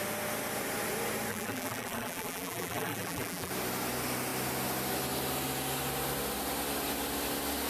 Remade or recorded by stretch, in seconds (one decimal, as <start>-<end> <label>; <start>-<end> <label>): 0.0-1.3 recorded; 1.3-3.5 remade; 3.5-7.7 recorded

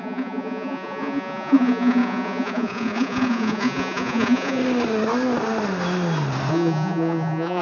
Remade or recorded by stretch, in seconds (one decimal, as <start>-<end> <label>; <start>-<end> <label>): 0.0-4.6 remade; 4.6-6.5 recorded; 6.5-7.6 remade